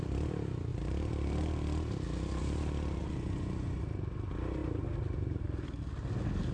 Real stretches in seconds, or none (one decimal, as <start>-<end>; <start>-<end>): 0.0-3.0; 3.8-6.5